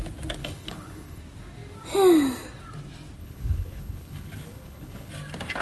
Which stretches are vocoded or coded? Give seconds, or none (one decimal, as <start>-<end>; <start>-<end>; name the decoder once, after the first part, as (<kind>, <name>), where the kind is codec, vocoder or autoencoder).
0.4-1.2 (codec, HILCodec); 3.2-5.1